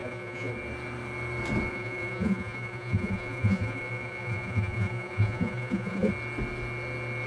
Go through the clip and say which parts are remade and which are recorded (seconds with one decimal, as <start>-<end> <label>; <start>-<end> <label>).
0.0-0.5 remade; 0.5-1.7 recorded; 1.7-6.1 remade; 6.1-7.3 recorded